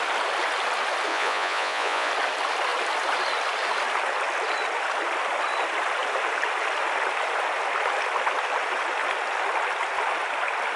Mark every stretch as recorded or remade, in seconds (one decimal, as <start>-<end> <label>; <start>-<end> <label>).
0.0-1.1 recorded; 1.1-2.1 remade; 2.1-10.8 recorded